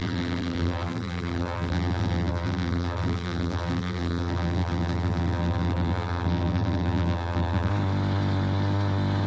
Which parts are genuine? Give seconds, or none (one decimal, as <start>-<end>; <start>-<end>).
7.7-9.3